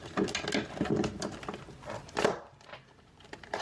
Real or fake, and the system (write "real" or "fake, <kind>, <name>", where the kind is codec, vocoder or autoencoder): real